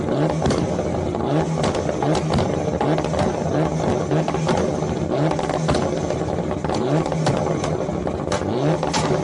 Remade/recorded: recorded